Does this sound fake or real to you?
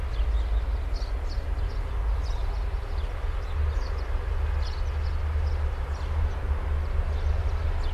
real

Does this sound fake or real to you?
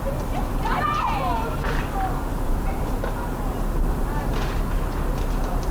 real